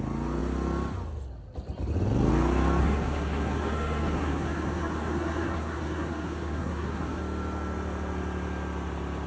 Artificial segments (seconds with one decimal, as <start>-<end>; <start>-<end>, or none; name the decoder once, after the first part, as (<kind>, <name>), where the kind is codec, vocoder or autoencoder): 2.8-7.2 (codec, SNAC)